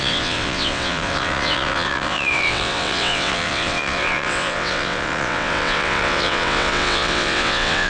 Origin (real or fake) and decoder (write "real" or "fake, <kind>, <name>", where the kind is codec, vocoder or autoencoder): fake, vocoder, WaveNeXt